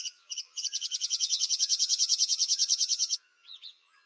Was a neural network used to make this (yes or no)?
yes